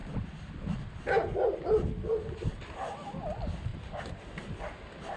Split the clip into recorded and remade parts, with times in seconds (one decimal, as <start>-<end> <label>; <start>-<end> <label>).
0.0-3.7 recorded; 3.7-4.5 remade; 4.5-5.2 recorded

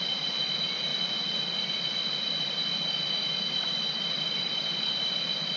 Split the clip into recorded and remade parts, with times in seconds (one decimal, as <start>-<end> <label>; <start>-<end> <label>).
0.0-5.6 recorded

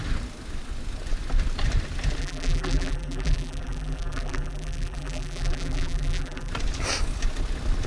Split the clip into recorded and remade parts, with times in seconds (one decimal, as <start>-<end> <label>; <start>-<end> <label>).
0.0-2.2 recorded; 2.2-6.5 remade; 6.5-7.9 recorded

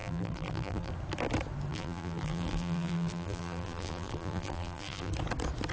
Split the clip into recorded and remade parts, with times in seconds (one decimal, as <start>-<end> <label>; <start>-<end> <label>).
0.0-0.9 remade; 0.9-1.7 recorded; 1.7-5.1 remade; 5.1-5.7 recorded

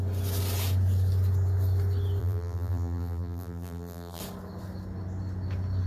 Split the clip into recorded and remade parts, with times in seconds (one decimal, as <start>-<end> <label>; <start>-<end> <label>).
0.0-2.2 recorded; 2.2-4.2 remade; 4.2-5.9 recorded

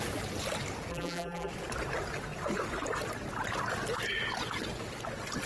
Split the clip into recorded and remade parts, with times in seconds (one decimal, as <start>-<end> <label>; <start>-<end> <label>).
0.0-0.9 recorded; 0.9-1.5 remade; 1.5-5.5 recorded

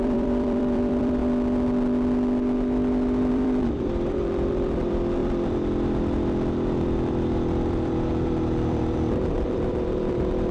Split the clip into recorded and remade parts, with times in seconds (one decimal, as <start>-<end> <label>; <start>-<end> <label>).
0.0-1.2 remade; 1.2-3.3 recorded; 3.3-10.5 remade